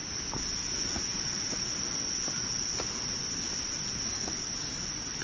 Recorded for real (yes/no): yes